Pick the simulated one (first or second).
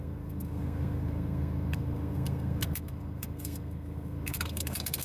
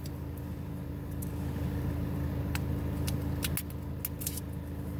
first